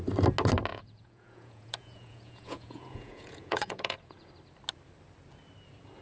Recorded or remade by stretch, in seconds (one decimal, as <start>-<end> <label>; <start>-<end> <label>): 0.0-0.7 recorded; 0.7-4.3 remade; 4.3-6.0 recorded